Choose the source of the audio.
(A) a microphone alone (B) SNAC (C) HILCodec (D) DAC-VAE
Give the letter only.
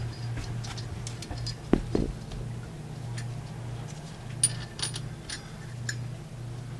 A